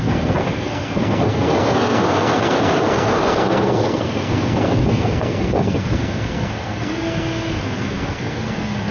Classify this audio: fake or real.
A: fake